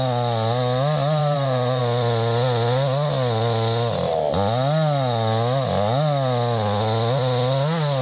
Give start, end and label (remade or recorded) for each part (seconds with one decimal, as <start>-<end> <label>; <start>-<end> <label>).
0.0-1.2 recorded; 1.2-1.8 remade; 1.8-8.0 recorded